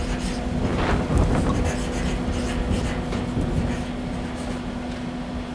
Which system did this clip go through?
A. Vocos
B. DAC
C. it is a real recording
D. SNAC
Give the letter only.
C